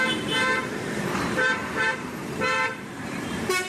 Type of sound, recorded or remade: remade